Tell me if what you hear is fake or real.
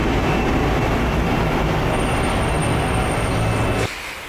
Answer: real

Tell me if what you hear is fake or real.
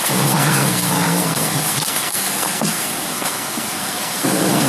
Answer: fake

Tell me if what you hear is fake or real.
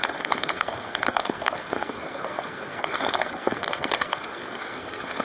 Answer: fake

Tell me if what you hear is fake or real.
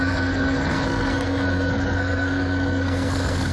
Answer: fake